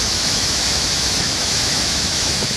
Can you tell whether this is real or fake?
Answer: fake